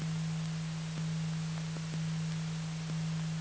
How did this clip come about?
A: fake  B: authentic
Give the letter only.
B